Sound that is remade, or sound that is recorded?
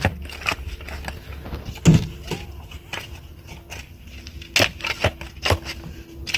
recorded